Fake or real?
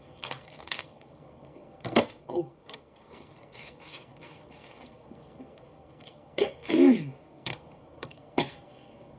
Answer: fake